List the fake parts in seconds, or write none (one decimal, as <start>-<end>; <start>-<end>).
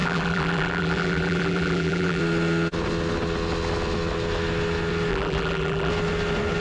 0.0-2.2; 5.1-5.9